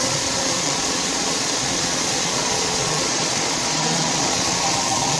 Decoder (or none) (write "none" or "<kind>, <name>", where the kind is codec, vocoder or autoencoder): vocoder, Vocos